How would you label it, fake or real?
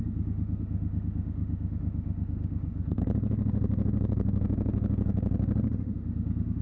fake